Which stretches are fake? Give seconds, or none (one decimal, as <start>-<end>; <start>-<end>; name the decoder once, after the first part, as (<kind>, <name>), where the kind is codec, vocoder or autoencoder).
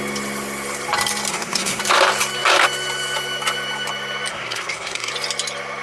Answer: 1.3-1.8 (codec, SNAC); 4.3-5.1